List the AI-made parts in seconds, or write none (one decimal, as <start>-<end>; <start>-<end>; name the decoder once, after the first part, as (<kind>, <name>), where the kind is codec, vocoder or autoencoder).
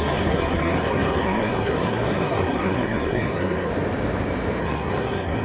0.0-3.7 (codec, SNAC); 4.6-5.4